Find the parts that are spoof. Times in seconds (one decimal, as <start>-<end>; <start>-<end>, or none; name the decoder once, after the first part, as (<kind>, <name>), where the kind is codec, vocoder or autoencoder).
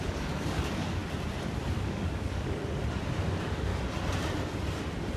0.0-1.0 (codec, DAC); 1.7-2.8; 3.3-3.7